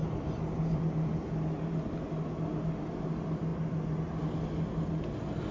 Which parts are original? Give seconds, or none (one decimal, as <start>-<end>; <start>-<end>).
1.3-5.5